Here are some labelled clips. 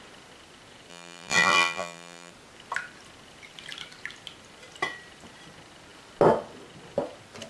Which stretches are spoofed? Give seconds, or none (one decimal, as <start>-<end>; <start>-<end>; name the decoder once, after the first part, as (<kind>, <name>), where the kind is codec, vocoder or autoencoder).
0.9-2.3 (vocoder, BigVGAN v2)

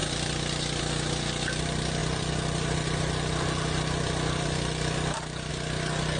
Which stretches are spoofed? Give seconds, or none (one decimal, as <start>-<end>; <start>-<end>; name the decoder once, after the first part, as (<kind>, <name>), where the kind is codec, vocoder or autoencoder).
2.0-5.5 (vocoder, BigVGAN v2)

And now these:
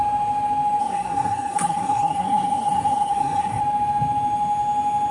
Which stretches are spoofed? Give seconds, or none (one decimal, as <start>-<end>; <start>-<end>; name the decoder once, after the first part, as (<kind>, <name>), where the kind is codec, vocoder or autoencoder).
0.8-3.6 (codec, SNAC)

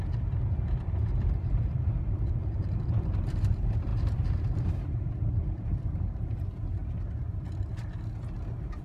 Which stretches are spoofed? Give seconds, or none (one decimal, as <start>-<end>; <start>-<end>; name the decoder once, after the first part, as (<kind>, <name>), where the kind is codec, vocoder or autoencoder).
0.0-6.8 (vocoder, BigVGAN v2)

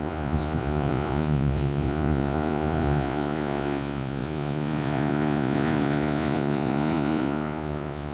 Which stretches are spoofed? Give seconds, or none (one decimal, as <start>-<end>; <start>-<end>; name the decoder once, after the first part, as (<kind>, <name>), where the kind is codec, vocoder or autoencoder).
0.0-8.1 (vocoder, Vocos)